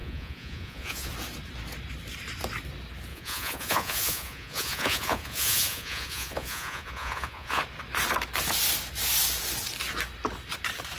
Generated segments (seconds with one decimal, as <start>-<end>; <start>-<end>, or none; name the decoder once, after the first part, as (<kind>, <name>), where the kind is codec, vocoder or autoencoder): 0.0-1.1 (vocoder, Vocos); 3.1-7.6